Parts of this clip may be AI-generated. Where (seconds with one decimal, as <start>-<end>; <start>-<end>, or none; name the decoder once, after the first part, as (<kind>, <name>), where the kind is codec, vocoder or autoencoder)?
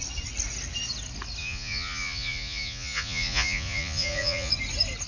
1.4-4.5 (vocoder, Vocos)